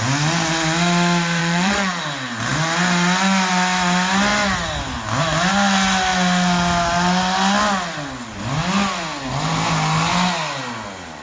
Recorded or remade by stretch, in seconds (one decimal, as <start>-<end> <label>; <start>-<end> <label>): 0.0-1.4 recorded; 1.4-2.0 remade; 2.0-11.2 recorded